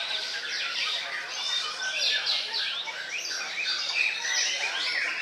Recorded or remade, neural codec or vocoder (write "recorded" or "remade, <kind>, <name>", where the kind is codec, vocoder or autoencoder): remade, vocoder, BigVGAN v2